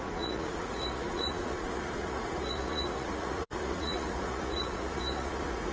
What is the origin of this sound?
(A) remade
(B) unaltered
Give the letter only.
A